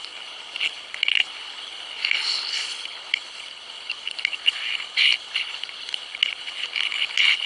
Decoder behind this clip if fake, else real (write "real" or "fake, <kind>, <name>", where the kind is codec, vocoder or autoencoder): fake, codec, HILCodec